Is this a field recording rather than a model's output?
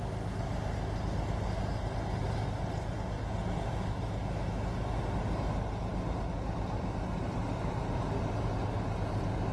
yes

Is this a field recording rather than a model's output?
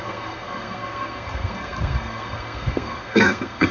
no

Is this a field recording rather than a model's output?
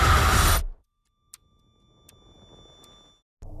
yes